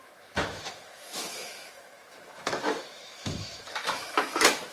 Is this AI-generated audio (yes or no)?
yes